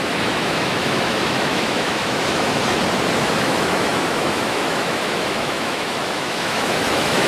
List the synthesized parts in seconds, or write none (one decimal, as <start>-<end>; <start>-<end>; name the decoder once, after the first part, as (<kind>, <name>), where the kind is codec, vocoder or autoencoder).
0.0-2.6 (autoencoder, DAC-VAE); 3.4-7.3

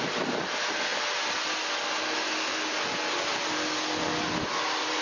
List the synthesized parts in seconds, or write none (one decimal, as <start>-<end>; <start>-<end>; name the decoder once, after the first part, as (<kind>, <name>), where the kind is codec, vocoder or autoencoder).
none

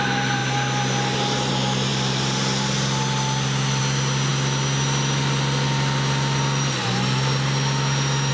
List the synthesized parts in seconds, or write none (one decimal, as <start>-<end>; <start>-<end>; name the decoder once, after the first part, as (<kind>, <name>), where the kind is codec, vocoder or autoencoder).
none

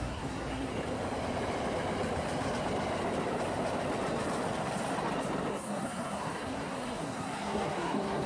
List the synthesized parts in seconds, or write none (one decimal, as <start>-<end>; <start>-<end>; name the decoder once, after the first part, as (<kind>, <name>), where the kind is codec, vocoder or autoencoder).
0.0-0.7 (codec, SNAC); 5.5-8.3

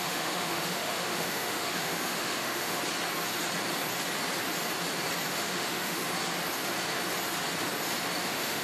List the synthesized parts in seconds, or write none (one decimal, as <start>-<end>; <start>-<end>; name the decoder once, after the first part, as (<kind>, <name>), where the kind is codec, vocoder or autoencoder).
0.0-2.8 (autoencoder, DAC-VAE); 5.3-6.0; 8.2-8.6